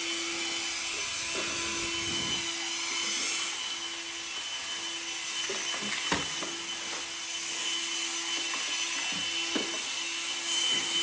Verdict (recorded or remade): recorded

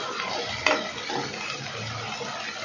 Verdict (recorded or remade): recorded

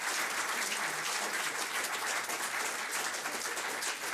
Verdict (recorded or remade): recorded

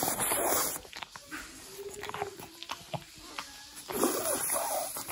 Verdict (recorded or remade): remade